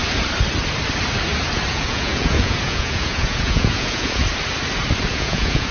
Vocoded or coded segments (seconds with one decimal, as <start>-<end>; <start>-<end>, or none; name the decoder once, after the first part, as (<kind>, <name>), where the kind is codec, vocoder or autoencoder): 1.7-4.2 (vocoder, Vocos); 5.1-5.7